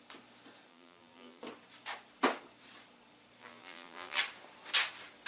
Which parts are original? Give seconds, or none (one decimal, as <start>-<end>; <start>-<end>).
0.0-0.7; 1.4-3.4; 4.2-5.3